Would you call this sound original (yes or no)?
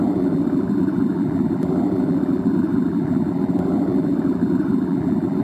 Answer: no